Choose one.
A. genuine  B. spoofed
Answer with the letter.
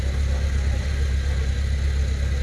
A